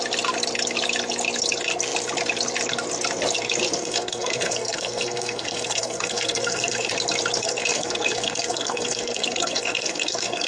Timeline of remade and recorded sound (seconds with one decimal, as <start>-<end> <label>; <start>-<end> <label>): 0.0-3.8 recorded; 3.8-6.9 remade; 6.9-7.4 recorded; 7.4-10.5 remade